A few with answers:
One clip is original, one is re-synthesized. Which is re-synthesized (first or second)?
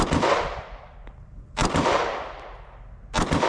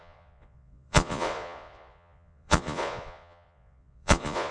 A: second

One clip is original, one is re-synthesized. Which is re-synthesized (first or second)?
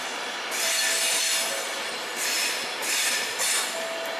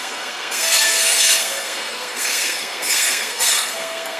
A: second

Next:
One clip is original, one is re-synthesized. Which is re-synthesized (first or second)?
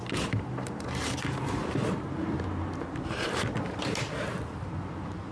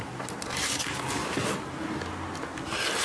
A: first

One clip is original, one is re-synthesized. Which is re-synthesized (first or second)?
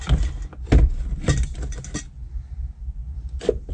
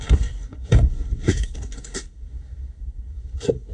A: second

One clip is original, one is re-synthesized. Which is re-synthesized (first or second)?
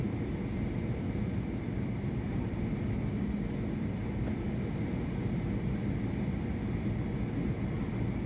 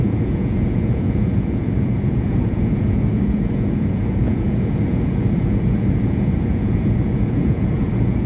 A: second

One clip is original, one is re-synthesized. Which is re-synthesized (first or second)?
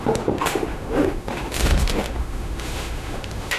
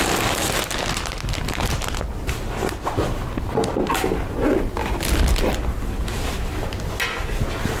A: first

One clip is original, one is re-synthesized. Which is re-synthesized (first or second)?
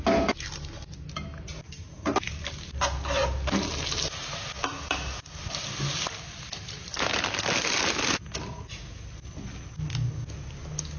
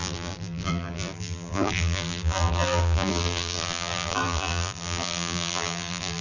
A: second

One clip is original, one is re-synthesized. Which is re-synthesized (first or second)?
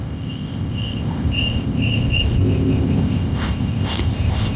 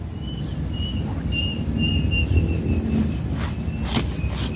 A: first